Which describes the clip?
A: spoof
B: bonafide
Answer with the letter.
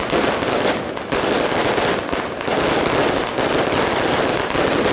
B